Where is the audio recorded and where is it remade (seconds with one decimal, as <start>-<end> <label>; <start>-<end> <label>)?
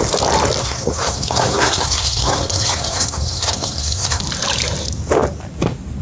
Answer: 0.0-0.6 recorded; 0.6-4.2 remade; 4.2-6.0 recorded